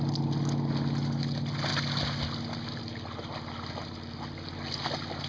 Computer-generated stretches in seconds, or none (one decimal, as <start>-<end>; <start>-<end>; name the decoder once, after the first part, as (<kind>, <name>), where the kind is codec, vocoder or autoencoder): none